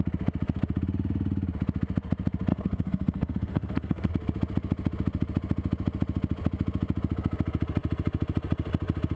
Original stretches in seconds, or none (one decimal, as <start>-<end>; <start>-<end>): 0.0-2.5; 4.1-9.2